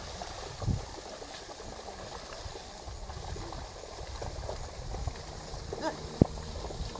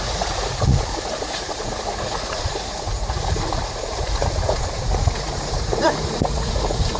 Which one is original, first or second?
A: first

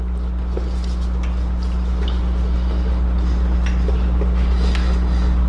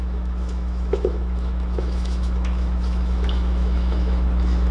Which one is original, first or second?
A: first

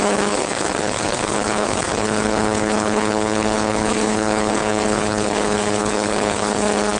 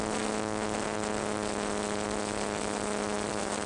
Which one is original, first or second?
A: second